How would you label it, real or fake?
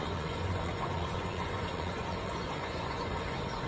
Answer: fake